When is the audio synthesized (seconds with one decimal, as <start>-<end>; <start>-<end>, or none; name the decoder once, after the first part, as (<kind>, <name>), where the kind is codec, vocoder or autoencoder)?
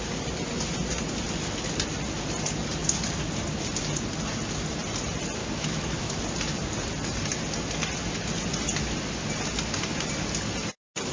5.4-6.2 (autoencoder, DAC-VAE)